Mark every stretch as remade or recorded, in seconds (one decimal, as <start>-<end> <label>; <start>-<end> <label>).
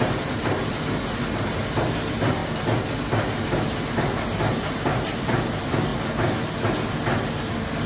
0.0-2.4 remade; 2.4-3.5 recorded; 3.5-5.9 remade; 5.9-7.4 recorded; 7.4-7.9 remade